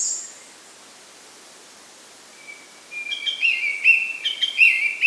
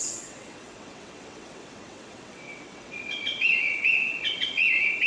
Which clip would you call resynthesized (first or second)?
second